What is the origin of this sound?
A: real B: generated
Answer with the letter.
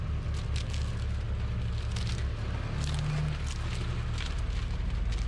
A